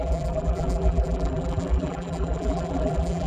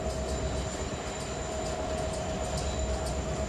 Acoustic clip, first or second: second